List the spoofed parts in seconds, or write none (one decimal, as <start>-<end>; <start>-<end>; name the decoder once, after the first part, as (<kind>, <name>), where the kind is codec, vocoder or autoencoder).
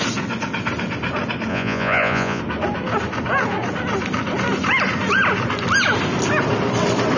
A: 1.5-2.4 (vocoder, Vocos)